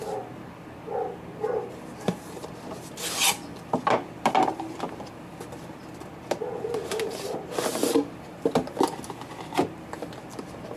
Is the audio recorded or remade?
recorded